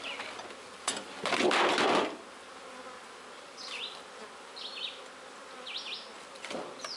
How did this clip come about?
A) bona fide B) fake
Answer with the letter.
A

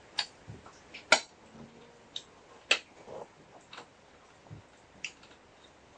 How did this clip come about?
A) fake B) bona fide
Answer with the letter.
B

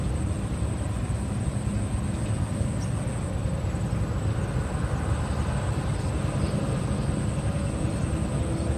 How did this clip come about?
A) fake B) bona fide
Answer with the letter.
B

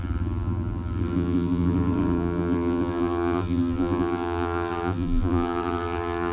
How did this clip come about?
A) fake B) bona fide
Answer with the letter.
A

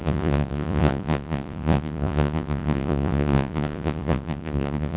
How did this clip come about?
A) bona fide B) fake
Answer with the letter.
B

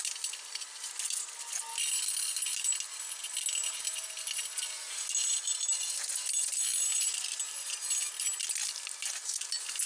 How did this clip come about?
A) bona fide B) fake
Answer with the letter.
A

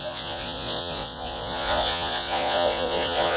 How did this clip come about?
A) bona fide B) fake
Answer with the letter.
B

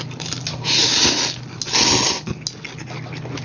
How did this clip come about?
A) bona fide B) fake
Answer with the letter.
A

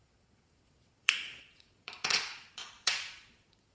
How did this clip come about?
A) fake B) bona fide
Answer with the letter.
A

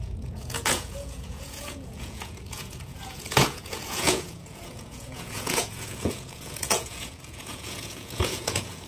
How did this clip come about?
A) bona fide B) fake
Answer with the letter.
B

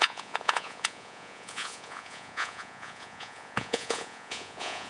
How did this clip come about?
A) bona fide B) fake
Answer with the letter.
B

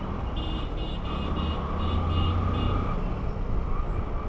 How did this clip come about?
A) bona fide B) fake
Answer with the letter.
A